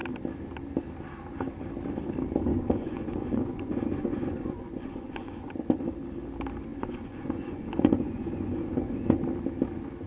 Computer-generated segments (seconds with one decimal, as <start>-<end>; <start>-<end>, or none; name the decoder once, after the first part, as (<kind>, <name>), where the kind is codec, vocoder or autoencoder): 2.4-5.5 (vocoder, Vocos); 6.7-9.2